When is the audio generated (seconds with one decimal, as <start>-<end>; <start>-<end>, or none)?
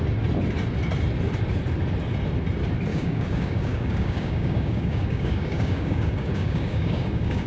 2.9-7.5